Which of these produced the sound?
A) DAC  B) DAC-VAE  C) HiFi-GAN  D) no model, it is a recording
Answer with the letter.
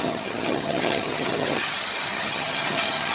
C